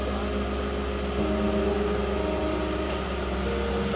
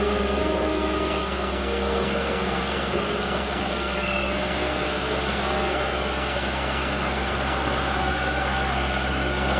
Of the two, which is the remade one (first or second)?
second